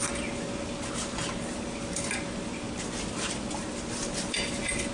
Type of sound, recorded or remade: recorded